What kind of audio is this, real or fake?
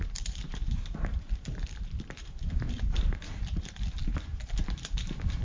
fake